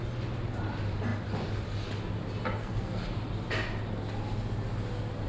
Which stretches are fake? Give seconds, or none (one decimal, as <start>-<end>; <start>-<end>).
2.6-3.3